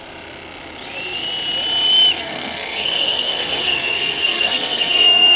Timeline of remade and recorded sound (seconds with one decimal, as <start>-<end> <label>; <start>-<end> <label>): 0.0-2.2 recorded; 2.2-5.4 remade